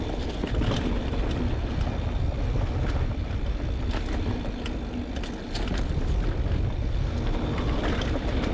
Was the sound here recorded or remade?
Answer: recorded